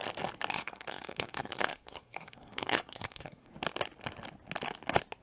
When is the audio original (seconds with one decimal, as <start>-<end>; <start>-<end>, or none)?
0.0-0.5; 3.5-5.2